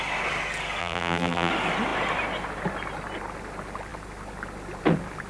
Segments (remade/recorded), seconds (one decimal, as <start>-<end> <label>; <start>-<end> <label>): 0.0-0.8 recorded; 0.8-1.5 remade; 1.5-5.3 recorded